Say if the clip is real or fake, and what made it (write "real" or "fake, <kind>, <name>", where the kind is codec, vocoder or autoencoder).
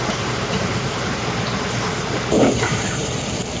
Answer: real